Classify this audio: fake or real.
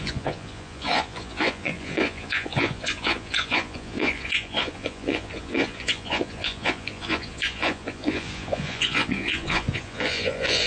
fake